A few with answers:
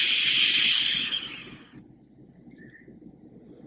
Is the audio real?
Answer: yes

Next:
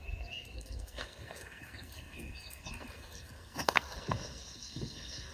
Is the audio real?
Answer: no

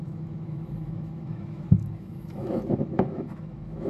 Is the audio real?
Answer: no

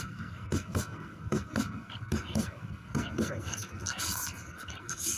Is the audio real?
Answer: no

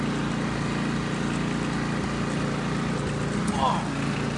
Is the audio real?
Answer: yes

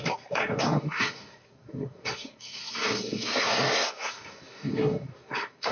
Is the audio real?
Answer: no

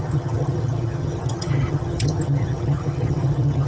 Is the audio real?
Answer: no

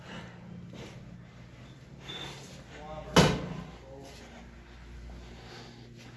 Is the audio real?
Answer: yes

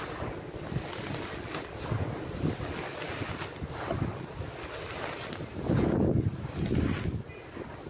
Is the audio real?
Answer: yes